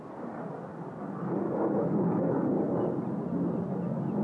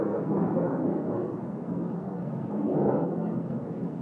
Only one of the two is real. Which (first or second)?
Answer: first